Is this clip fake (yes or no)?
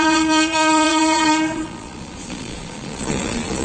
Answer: yes